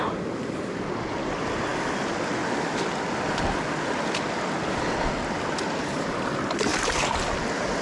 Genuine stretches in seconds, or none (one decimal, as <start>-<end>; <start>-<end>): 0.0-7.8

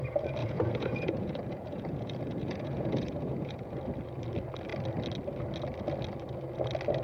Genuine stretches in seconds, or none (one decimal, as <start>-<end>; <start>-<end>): 0.0-0.4; 3.8-7.0

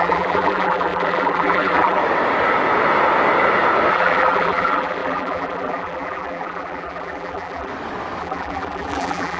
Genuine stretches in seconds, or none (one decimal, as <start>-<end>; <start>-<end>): 2.0-3.9; 7.7-8.2